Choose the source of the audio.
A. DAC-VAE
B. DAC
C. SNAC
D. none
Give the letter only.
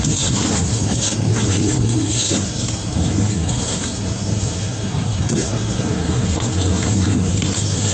C